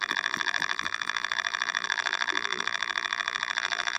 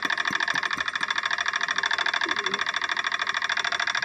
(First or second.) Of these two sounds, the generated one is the first